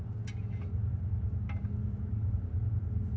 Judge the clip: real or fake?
fake